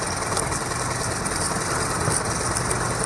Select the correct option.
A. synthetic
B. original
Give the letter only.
B